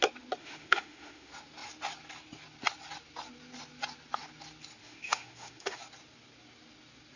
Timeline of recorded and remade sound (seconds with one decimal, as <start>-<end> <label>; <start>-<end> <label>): 0.0-0.4 recorded; 0.4-1.3 remade; 1.3-4.8 recorded; 4.8-5.8 remade; 5.8-7.2 recorded